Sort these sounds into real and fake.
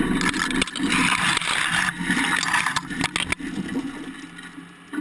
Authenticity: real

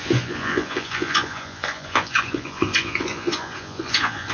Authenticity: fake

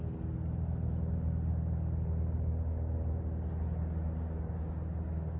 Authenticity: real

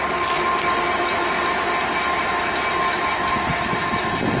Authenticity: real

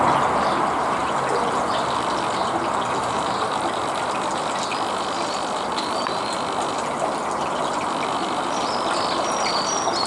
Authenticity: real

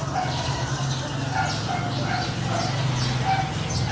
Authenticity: real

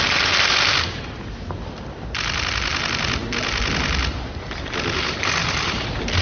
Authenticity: real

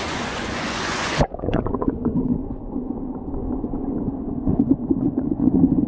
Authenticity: fake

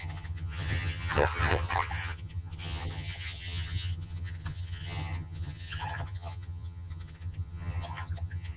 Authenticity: fake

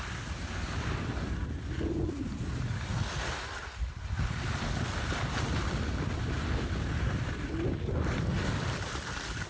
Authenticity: real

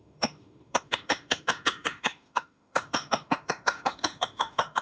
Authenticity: fake